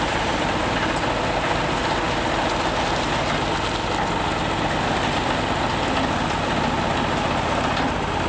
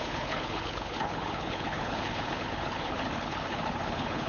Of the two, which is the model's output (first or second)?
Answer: second